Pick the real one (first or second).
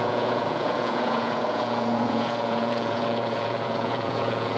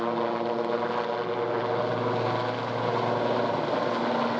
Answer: second